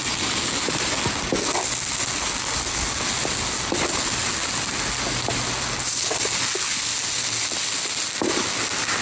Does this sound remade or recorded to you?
recorded